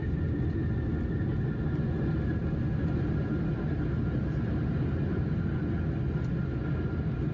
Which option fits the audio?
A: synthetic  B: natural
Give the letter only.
B